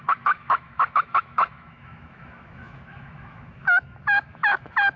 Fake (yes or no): yes